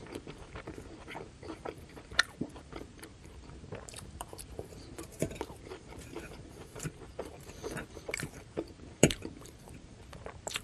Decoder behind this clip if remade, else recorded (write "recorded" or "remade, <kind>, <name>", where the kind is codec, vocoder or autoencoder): remade, vocoder, BigVGAN v2